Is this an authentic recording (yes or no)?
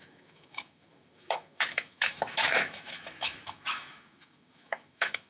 no